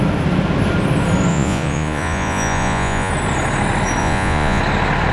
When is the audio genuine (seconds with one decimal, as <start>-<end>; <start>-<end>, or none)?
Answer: 0.0-1.3; 3.1-4.0; 4.6-5.1